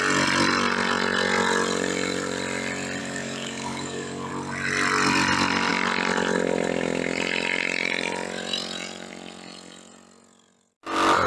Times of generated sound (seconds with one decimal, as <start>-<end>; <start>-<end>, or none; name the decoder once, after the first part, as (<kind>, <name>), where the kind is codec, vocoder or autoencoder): 3.0-4.3 (codec, DAC)